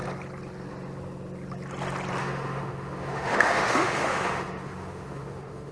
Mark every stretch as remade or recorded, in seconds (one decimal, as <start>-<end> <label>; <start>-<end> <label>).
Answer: 0.0-2.2 recorded; 2.2-5.7 remade